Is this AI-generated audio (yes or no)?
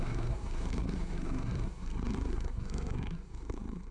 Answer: yes